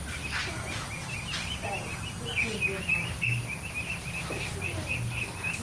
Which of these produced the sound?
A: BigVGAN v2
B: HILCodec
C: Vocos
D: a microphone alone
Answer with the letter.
D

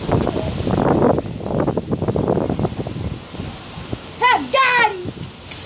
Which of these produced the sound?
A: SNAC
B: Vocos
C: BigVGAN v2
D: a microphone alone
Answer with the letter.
D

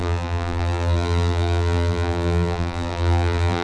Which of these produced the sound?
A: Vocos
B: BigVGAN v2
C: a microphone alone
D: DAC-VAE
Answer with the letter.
B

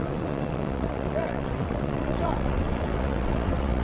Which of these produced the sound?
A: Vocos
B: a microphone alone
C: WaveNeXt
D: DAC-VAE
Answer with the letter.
C